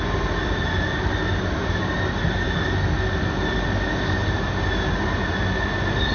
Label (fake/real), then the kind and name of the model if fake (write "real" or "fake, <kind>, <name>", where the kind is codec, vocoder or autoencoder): real